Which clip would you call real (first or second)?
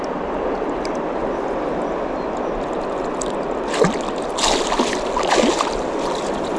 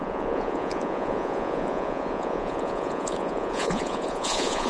first